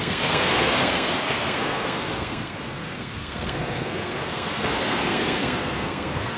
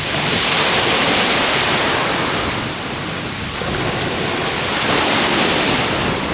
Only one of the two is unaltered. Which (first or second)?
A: second